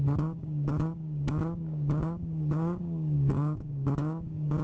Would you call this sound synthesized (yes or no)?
yes